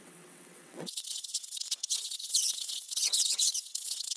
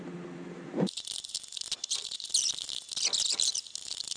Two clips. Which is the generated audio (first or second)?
first